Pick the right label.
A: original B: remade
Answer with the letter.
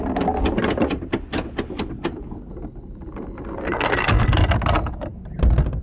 A